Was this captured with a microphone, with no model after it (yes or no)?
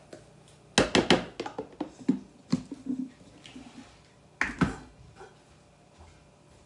yes